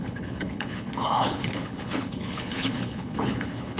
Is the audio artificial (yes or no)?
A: yes